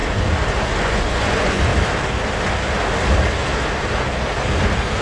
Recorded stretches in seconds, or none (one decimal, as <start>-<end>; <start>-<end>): 0.0-0.8; 1.7-5.0

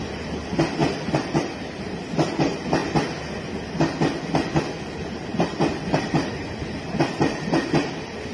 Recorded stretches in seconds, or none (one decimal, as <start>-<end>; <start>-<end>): 0.0-0.8; 2.1-5.3; 7.4-8.3

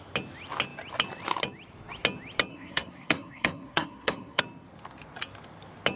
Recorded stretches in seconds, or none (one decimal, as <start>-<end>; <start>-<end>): 0.0-2.5; 4.4-6.0

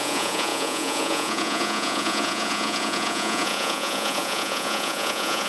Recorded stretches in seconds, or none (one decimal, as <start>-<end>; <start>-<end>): none

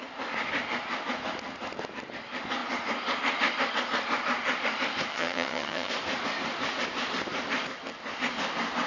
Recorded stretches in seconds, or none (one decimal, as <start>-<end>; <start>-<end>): 0.0-5.1; 5.9-8.9

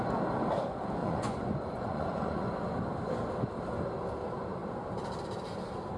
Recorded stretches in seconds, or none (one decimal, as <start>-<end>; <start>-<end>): 0.0-1.0; 2.5-6.0

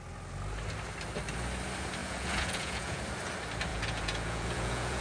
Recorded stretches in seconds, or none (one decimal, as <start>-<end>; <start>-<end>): 0.0-2.0; 3.0-3.7